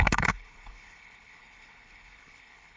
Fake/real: fake